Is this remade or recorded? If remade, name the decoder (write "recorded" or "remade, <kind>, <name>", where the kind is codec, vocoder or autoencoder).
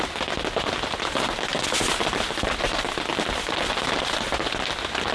recorded